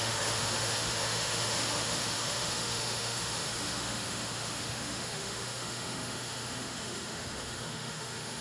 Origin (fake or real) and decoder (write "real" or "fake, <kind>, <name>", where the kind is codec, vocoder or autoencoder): fake, autoencoder, DAC-VAE